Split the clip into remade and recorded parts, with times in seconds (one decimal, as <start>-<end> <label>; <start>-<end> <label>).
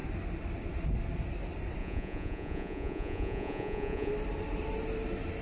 0.0-1.8 recorded; 1.8-4.1 remade; 4.1-5.4 recorded